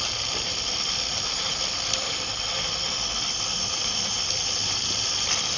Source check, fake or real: real